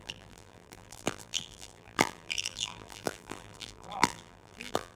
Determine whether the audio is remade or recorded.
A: remade